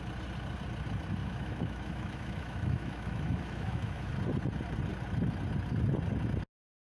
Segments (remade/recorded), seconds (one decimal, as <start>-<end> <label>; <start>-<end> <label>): 0.0-1.2 recorded; 1.2-4.1 remade; 4.1-6.8 recorded

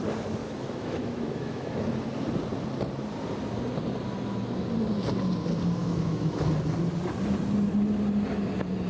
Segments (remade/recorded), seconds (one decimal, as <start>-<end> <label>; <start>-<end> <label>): 0.0-0.4 recorded; 0.4-1.8 remade; 1.8-5.8 recorded; 5.8-6.4 remade; 6.4-8.9 recorded

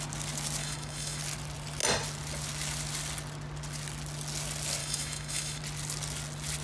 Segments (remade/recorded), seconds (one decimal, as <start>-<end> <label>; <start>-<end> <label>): 0.0-0.6 recorded; 0.6-1.2 remade; 1.2-4.8 recorded; 4.8-5.6 remade; 5.6-6.6 recorded

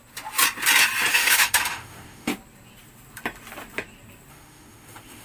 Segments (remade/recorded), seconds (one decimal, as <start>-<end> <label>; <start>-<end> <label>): 0.0-1.1 recorded; 1.1-2.3 remade; 2.3-4.3 recorded; 4.3-5.2 remade

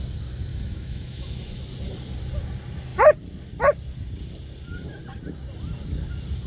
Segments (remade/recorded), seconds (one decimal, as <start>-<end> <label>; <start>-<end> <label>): 0.0-0.5 recorded; 0.5-1.6 remade; 1.6-6.5 recorded